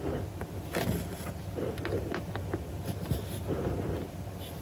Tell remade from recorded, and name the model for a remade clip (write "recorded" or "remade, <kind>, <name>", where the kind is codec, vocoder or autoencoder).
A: recorded